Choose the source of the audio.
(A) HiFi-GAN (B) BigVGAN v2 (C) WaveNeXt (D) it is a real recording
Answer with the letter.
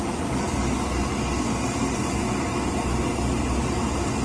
D